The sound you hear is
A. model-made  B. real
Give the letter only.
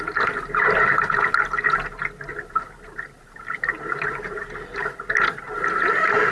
B